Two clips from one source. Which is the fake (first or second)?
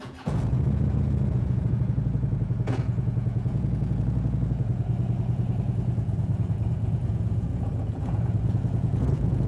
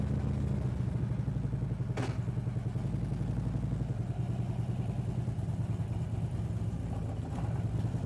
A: first